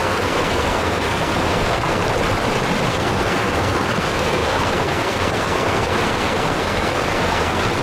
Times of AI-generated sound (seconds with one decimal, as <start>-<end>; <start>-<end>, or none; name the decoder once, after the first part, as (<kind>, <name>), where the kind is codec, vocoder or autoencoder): 0.0-2.0 (codec, SNAC); 2.9-7.8